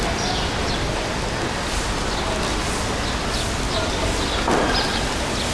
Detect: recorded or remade recorded